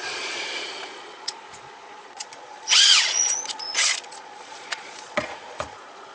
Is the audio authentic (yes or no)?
no